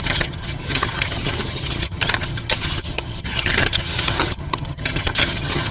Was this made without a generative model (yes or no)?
no